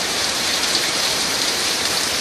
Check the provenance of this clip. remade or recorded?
remade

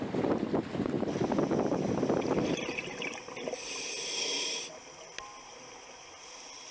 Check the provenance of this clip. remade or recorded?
recorded